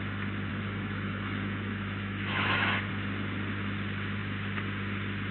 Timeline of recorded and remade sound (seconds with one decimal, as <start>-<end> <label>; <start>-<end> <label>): 0.0-0.5 recorded; 0.5-2.9 remade; 2.9-5.3 recorded